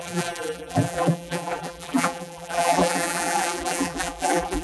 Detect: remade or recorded remade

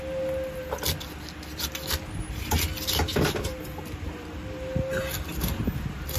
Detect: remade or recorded recorded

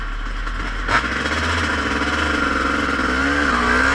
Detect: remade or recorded recorded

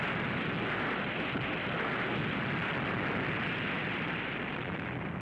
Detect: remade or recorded remade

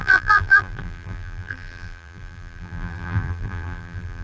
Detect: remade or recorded remade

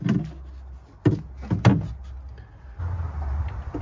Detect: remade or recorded recorded